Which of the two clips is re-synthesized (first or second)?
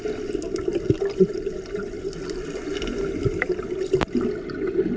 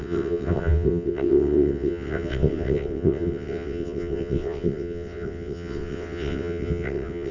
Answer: second